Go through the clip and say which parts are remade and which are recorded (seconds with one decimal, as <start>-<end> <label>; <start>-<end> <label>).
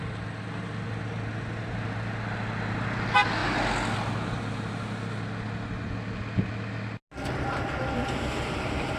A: 0.0-9.0 recorded